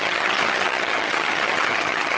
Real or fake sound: fake